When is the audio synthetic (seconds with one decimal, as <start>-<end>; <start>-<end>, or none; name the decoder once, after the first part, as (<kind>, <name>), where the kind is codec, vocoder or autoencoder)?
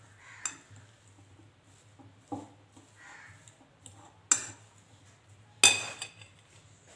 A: none